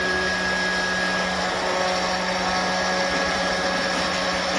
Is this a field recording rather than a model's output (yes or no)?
yes